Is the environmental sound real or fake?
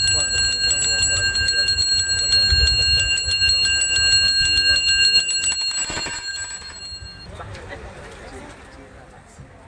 real